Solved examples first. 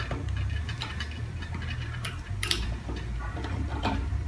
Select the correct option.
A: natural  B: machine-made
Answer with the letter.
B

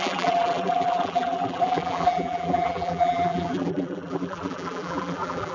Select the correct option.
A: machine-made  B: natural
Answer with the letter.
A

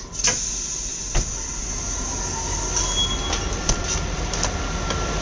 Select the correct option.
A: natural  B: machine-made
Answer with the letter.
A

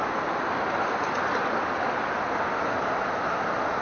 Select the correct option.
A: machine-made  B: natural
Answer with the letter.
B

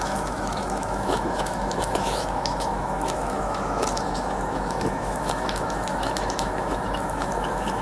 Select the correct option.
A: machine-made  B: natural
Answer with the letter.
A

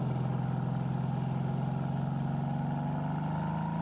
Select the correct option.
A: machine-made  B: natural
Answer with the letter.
B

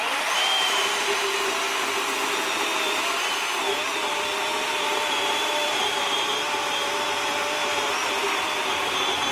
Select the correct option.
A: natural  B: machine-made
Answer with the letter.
B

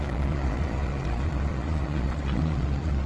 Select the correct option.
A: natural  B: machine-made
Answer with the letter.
B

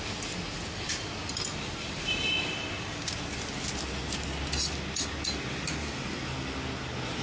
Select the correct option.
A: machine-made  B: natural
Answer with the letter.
B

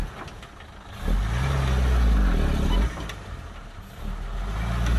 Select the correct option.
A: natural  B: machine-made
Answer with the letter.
A